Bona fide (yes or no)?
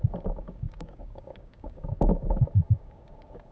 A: no